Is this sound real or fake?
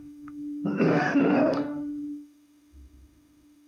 fake